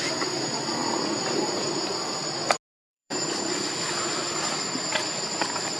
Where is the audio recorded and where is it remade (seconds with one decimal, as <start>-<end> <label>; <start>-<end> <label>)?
0.0-2.9 recorded; 2.9-3.4 remade; 3.4-5.8 recorded

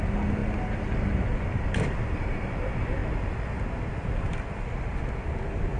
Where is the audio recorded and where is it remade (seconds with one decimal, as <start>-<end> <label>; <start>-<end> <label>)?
0.0-5.8 recorded

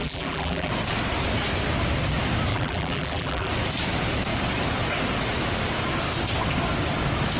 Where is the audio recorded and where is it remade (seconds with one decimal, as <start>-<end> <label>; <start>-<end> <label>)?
0.0-0.7 remade; 0.7-2.5 recorded; 2.5-3.5 remade; 3.5-7.4 recorded

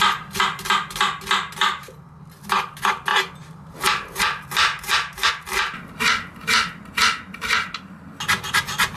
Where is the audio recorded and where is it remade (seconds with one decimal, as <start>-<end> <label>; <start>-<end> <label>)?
0.0-9.0 recorded